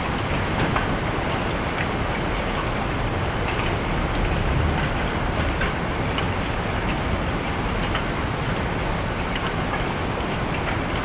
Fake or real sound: real